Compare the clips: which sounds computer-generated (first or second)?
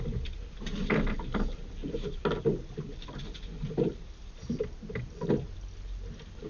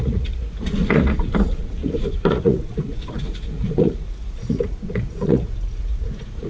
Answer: second